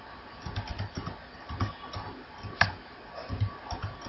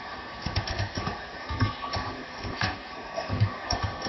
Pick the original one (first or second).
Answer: first